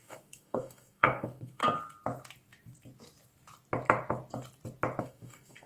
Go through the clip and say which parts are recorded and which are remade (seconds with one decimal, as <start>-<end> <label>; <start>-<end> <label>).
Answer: 0.0-1.6 remade; 1.6-5.0 recorded; 5.0-5.7 remade